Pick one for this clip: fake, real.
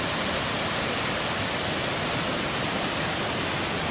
real